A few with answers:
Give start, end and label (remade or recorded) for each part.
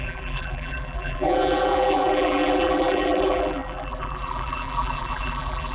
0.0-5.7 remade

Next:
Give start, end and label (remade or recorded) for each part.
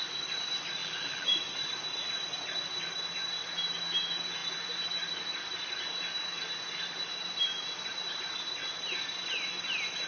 0.0-0.8 recorded; 0.8-1.4 remade; 1.4-10.1 recorded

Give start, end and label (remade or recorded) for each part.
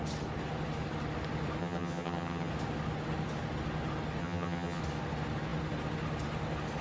0.0-1.6 recorded; 1.6-2.5 remade; 2.5-4.2 recorded; 4.2-4.8 remade; 4.8-6.8 recorded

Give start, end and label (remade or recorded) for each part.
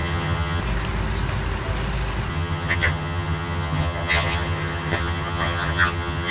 0.0-0.6 remade; 0.6-2.3 recorded; 2.3-6.3 remade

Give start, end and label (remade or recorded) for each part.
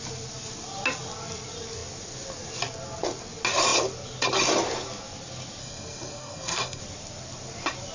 0.0-5.6 recorded; 5.6-6.8 remade; 6.8-7.9 recorded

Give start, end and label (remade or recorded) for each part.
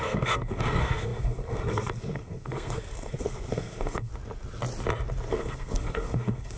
0.0-4.1 remade; 4.1-5.3 recorded; 5.3-6.6 remade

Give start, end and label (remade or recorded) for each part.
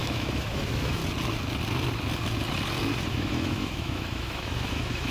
0.0-1.0 remade; 1.0-3.1 recorded; 3.1-5.1 remade